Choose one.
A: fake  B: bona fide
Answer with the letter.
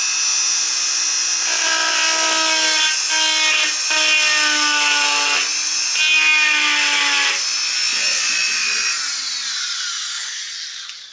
B